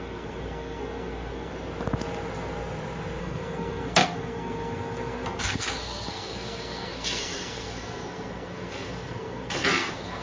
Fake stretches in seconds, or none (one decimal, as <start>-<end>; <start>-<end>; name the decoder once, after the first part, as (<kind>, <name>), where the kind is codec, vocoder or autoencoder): 0.0-1.5 (codec, SNAC); 3.2-10.2